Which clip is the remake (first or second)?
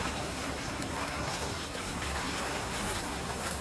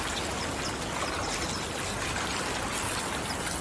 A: first